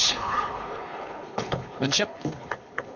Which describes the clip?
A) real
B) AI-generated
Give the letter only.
B